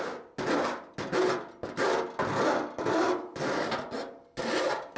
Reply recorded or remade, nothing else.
recorded